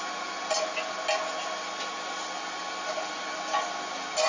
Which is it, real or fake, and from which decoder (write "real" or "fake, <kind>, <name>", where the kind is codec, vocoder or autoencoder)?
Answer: real